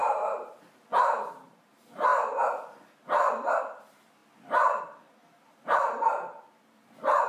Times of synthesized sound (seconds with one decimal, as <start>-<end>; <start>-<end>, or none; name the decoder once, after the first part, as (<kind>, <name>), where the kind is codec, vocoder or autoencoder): 0.0-2.1 (vocoder, BigVGAN v2); 3.6-4.2; 4.8-7.3